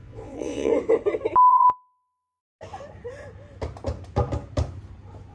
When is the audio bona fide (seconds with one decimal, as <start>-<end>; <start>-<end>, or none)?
0.7-1.5; 2.4-5.3